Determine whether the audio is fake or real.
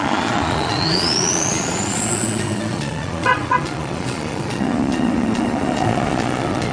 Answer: fake